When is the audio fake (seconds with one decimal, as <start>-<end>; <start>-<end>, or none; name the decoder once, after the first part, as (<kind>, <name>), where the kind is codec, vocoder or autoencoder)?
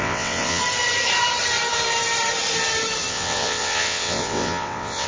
0.0-0.6 (vocoder, WaveNeXt); 3.1-5.1